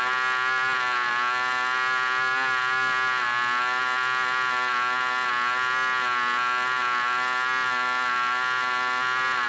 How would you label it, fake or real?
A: real